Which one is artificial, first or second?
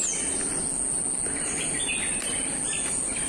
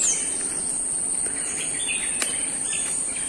second